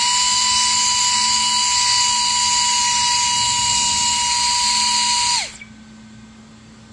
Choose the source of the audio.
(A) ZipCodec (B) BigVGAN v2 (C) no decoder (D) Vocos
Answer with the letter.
C